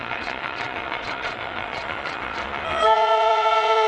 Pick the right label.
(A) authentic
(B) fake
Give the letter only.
B